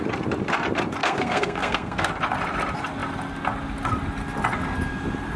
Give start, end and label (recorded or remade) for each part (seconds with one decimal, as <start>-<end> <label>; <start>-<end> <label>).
0.0-1.0 recorded; 1.0-2.1 remade; 2.1-5.4 recorded